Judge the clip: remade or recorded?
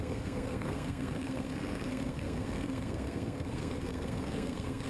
remade